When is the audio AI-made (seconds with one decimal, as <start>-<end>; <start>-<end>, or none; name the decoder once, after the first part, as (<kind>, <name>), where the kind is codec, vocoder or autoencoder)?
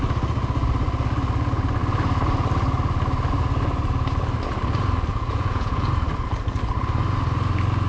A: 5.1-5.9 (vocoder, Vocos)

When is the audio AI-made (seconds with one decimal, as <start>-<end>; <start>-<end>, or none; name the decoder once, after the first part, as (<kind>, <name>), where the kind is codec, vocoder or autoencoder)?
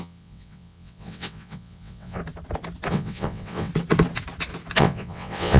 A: 0.0-2.2 (vocoder, WaveNeXt); 2.9-3.7; 4.8-5.6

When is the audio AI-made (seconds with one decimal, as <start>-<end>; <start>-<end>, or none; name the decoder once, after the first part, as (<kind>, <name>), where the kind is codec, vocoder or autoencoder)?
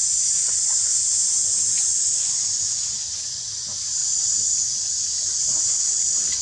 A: 0.0-0.9 (vocoder, Vocos); 2.0-6.4